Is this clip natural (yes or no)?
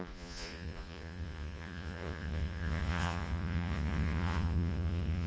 no